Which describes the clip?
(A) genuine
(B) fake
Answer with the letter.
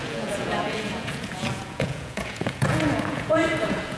B